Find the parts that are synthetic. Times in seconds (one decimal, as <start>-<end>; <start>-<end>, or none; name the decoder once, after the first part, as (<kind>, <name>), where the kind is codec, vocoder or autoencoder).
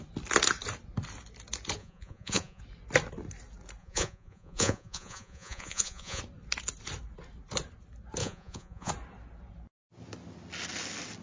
1.8-2.6 (vocoder, Vocos); 3.8-6.2; 8.2-8.9